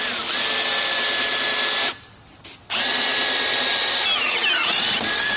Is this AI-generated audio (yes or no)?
no